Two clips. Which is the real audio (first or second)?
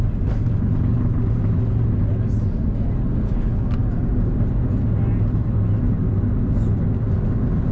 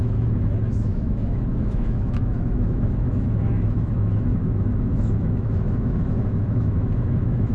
first